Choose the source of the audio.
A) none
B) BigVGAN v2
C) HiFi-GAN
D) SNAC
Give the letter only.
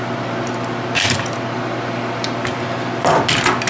A